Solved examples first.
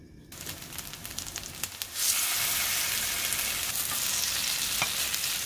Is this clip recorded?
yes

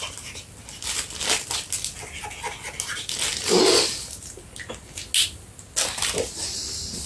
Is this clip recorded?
yes